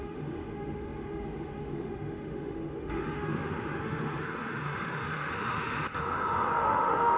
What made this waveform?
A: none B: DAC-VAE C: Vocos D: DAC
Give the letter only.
B